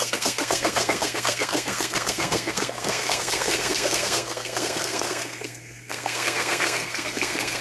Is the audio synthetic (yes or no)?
yes